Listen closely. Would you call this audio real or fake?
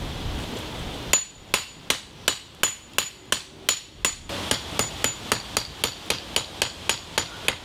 real